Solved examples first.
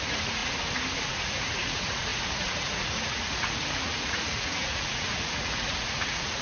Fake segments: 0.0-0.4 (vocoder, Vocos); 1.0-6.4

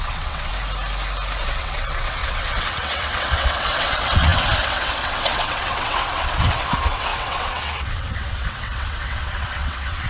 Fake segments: 0.0-0.5 (vocoder, WaveNeXt); 1.4-10.1

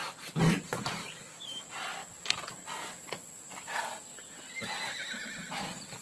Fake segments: 1.0-1.6 (codec, DAC)

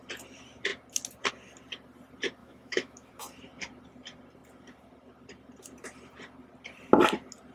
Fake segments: 2.4-3.1 (autoencoder, DAC-VAE)